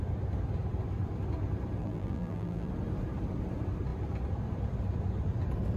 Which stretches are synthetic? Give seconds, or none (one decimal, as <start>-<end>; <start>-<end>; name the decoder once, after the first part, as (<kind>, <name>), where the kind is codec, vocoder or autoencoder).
1.8-2.7 (vocoder, BigVGAN v2)